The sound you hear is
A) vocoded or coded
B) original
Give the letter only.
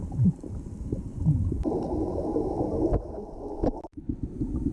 B